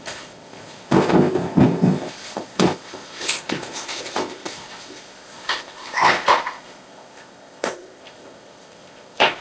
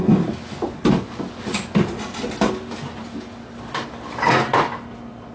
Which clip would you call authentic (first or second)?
second